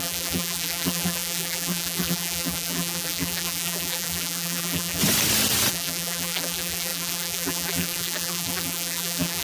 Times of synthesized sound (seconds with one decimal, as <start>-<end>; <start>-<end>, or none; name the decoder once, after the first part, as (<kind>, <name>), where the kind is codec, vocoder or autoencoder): 0.0-5.0 (vocoder, BigVGAN v2); 5.7-9.4